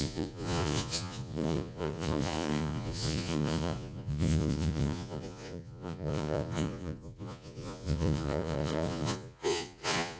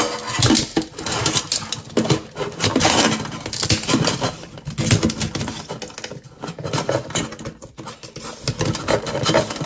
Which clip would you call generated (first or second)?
first